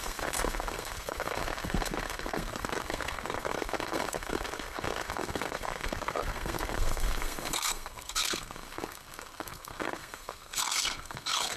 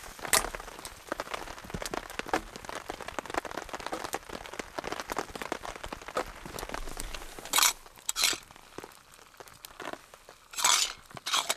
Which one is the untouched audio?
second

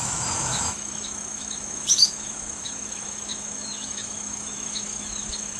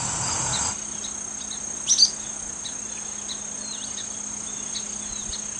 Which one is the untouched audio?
second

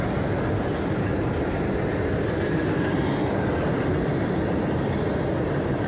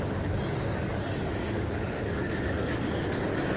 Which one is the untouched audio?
first